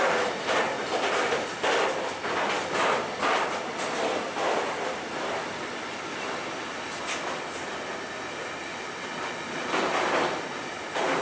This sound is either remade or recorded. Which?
recorded